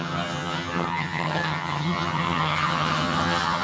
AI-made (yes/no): yes